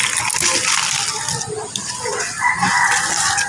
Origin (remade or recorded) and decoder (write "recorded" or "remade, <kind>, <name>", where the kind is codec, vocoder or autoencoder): recorded